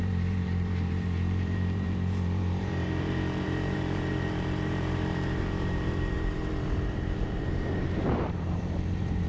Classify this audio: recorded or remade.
remade